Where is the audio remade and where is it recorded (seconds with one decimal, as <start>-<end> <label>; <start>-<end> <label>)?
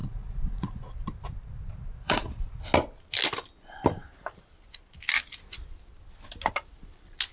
0.0-0.9 remade; 0.9-2.0 recorded; 2.0-2.5 remade; 2.5-7.3 recorded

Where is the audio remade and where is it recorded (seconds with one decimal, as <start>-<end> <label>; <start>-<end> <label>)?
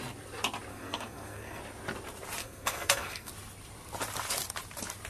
0.0-0.7 recorded; 0.7-1.6 remade; 1.6-2.4 recorded; 2.4-3.3 remade; 3.3-5.1 recorded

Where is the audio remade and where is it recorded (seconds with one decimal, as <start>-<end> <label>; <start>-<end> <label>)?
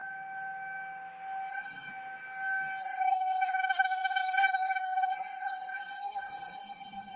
0.0-1.5 recorded; 1.5-1.9 remade; 1.9-2.8 recorded; 2.8-7.2 remade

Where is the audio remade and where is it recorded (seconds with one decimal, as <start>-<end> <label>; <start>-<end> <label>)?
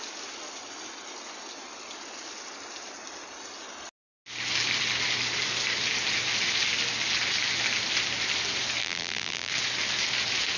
0.0-8.8 recorded; 8.8-9.5 remade; 9.5-10.6 recorded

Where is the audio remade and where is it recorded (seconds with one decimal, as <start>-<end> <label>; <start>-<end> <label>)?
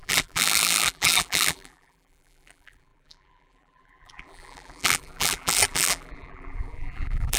0.0-7.4 remade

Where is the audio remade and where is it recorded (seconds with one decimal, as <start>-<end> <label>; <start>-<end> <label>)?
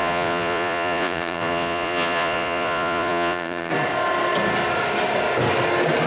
0.0-3.7 remade; 3.7-6.1 recorded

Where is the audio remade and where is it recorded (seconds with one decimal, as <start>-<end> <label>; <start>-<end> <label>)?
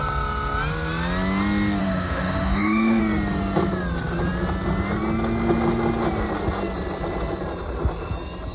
0.0-1.8 recorded; 1.8-3.0 remade; 3.0-8.5 recorded